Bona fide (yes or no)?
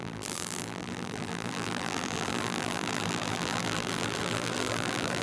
no